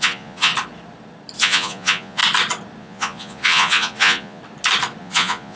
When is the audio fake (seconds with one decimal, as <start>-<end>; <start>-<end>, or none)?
0.0-0.5; 1.4-2.2; 2.8-4.4; 5.0-5.6